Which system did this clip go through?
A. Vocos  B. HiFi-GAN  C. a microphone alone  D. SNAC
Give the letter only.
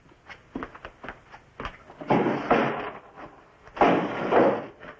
C